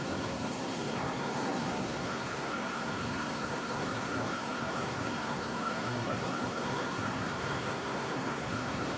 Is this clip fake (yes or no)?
yes